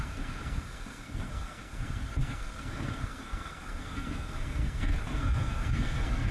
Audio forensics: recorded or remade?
remade